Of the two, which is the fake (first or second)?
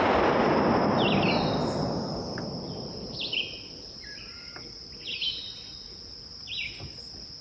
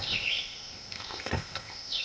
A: second